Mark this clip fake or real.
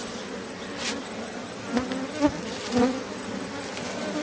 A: real